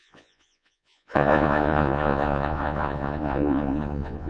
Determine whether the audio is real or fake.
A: fake